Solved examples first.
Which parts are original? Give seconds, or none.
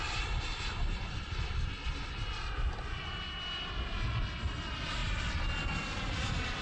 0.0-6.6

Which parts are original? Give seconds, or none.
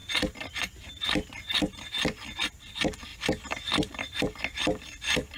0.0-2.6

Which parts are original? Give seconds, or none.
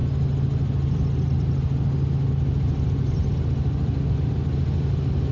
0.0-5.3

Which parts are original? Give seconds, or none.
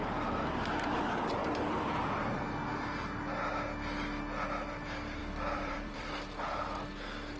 0.0-1.4; 1.9-5.2; 6.1-7.4